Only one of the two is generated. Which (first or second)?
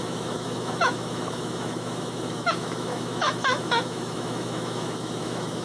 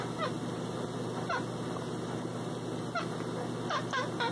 first